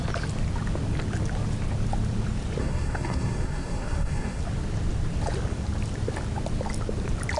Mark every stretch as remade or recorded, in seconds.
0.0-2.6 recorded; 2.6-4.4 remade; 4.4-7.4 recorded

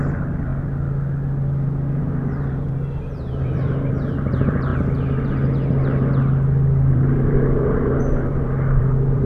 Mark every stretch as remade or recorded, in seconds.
0.0-0.5 remade; 0.5-2.0 recorded; 2.0-4.7 remade; 4.7-6.9 recorded; 6.9-9.3 remade

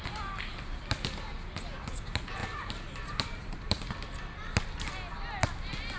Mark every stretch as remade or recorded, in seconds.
0.0-2.4 recorded; 2.4-4.2 remade; 4.2-6.0 recorded

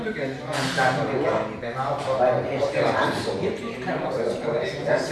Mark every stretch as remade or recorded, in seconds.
0.0-1.6 recorded; 1.6-4.5 remade; 4.5-5.1 recorded

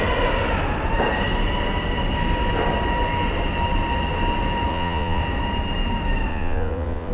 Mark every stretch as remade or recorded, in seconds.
0.0-4.7 recorded; 4.7-5.2 remade; 5.2-6.3 recorded; 6.3-7.1 remade

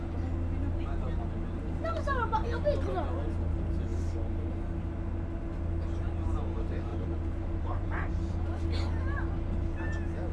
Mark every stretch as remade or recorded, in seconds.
0.0-6.9 recorded; 6.9-8.1 remade; 8.1-10.3 recorded

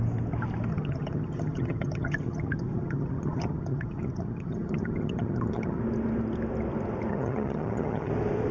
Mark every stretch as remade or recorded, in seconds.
0.0-0.7 recorded; 0.7-5.8 remade; 5.8-7.1 recorded; 7.1-8.1 remade; 8.1-8.5 recorded